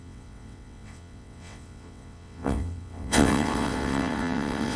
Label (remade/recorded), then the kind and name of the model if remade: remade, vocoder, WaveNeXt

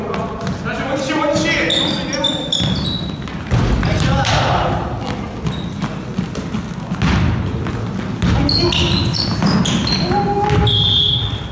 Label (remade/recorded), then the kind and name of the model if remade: recorded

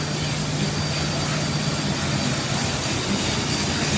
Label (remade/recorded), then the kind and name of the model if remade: recorded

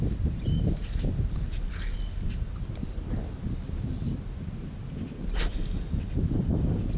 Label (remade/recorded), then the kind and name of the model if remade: recorded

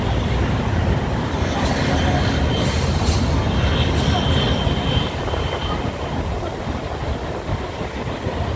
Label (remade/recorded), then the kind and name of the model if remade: recorded